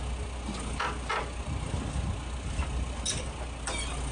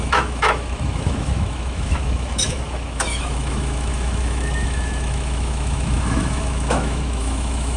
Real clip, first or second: first